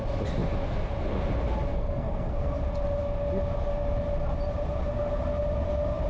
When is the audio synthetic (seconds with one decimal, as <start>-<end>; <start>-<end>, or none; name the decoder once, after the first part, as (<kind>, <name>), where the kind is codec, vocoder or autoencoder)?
1.7-2.5 (codec, SNAC)